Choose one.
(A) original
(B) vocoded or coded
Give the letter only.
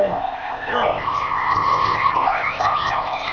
B